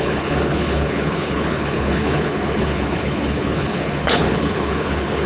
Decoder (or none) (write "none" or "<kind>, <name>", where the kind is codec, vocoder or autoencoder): codec, HILCodec